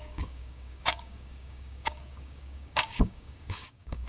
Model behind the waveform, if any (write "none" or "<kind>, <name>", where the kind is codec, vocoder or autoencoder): codec, DAC